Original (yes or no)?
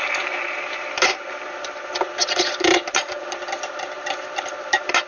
no